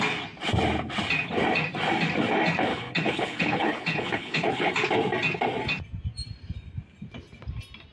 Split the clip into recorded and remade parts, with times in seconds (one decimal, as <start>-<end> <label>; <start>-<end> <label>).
0.0-2.7 recorded; 2.7-4.7 remade; 4.7-7.9 recorded